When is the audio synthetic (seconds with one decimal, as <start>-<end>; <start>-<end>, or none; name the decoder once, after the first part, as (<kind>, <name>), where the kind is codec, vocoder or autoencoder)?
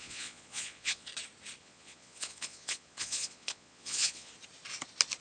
0.0-1.1 (vocoder, Vocos); 1.6-4.3